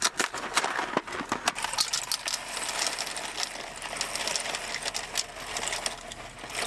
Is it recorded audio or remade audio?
recorded